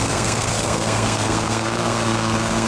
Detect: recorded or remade remade